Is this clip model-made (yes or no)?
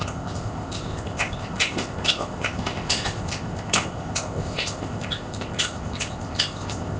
yes